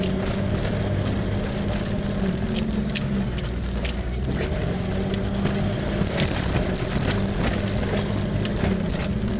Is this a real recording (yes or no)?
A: yes